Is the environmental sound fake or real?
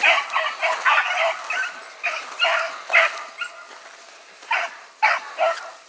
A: real